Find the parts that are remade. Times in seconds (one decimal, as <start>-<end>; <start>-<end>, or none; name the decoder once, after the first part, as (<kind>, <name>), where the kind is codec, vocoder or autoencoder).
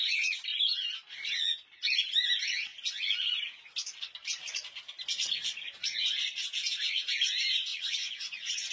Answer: 2.7-3.2 (vocoder, Vocos); 7.7-8.7